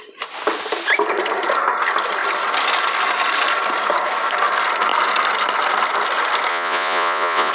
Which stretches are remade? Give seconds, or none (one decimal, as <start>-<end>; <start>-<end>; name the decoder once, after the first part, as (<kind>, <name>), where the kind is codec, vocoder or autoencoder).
6.5-7.5 (vocoder, Vocos)